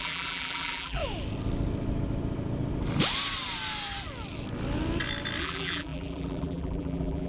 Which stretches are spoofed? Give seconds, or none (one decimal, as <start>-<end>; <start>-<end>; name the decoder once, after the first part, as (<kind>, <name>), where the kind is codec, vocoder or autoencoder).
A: 0.0-1.0 (vocoder, BigVGAN v2); 5.4-7.3